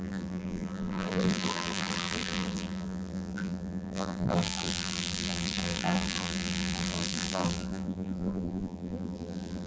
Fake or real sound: fake